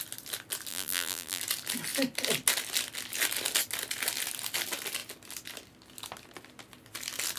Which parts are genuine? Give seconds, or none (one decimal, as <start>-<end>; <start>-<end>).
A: 0.0-0.7; 1.4-7.4